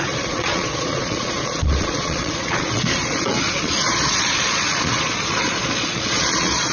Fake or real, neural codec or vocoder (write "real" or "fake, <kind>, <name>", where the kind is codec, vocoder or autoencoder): fake, vocoder, Vocos